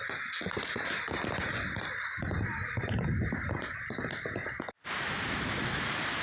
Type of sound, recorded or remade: recorded